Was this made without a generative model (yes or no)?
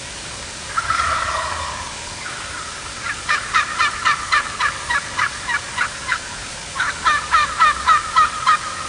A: no